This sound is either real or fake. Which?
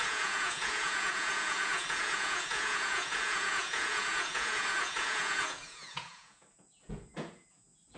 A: fake